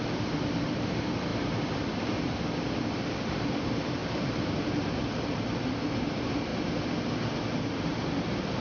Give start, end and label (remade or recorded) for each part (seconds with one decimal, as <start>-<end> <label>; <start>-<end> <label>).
0.0-1.3 remade; 1.3-3.0 recorded; 3.0-6.5 remade; 6.5-7.6 recorded; 7.6-8.6 remade